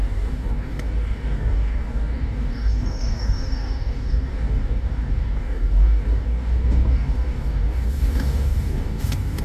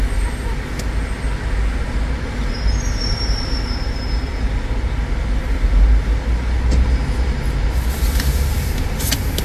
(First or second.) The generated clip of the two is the first